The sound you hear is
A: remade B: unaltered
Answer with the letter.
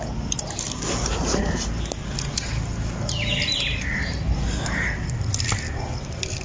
B